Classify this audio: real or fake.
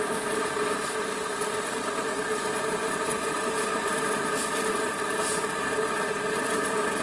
real